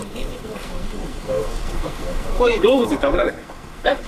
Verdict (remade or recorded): remade